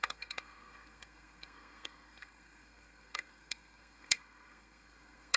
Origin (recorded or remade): remade